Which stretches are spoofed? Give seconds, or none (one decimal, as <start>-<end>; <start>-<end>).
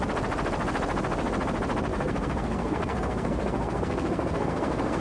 1.9-5.0